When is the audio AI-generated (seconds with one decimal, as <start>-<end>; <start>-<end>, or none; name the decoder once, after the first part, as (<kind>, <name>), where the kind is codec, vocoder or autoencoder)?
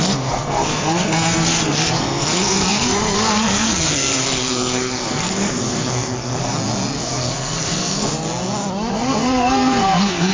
0.0-6.5 (codec, SNAC); 7.0-8.1; 8.9-10.3